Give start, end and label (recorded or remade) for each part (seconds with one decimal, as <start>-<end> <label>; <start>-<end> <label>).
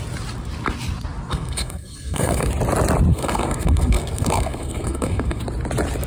0.0-1.3 recorded; 1.3-2.5 remade; 2.5-3.1 recorded; 3.1-5.4 remade; 5.4-6.1 recorded